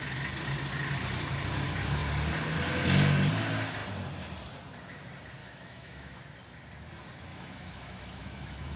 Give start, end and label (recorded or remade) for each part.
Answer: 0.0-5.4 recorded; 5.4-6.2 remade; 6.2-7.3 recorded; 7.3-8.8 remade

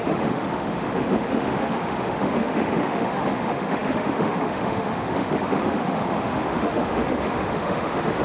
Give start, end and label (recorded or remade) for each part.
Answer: 0.0-8.2 remade

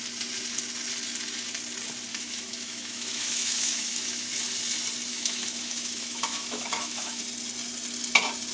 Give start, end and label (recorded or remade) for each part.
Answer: 0.0-2.1 recorded; 2.1-4.3 remade; 4.3-5.1 recorded; 5.1-7.2 remade; 7.2-8.5 recorded

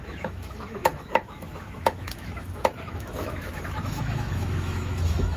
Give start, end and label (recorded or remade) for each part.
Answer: 0.0-5.4 remade